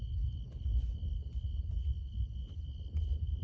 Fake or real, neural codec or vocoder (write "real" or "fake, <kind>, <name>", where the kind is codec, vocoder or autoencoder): real